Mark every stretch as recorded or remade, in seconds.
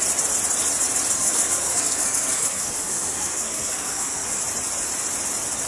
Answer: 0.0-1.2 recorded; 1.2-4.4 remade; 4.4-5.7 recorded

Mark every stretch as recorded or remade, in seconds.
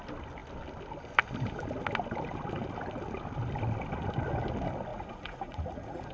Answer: 0.0-4.9 recorded; 4.9-6.1 remade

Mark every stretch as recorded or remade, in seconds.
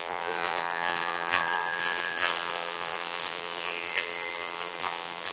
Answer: 0.0-5.3 remade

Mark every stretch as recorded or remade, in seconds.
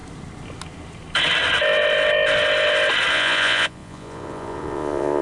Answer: 0.0-3.1 recorded; 3.1-5.2 remade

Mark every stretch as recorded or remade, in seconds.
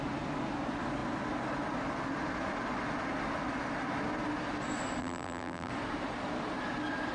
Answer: 0.0-5.0 recorded; 5.0-5.7 remade; 5.7-7.1 recorded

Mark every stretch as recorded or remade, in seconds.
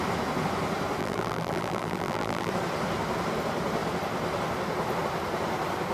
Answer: 0.0-1.0 recorded; 1.0-2.5 remade; 2.5-5.9 recorded